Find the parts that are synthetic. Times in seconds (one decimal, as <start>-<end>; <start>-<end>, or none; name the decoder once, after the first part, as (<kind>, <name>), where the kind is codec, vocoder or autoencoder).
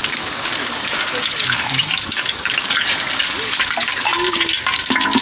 0.0-4.1 (codec, DAC)